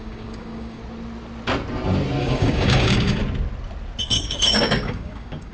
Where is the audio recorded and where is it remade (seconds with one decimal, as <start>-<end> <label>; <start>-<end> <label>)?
0.0-0.8 remade; 0.8-2.2 recorded; 2.2-3.2 remade; 3.2-4.0 recorded; 4.0-5.5 remade